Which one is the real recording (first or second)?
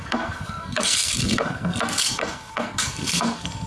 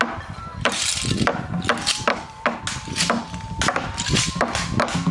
second